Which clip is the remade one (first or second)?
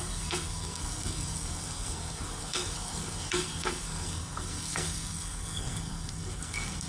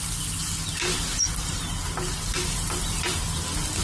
first